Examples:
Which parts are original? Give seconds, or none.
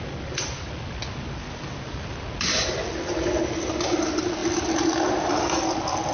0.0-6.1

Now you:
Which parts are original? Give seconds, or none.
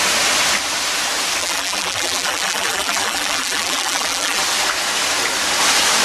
0.0-1.4; 4.4-6.0